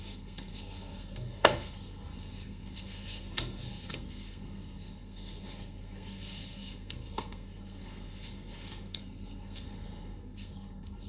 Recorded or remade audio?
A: remade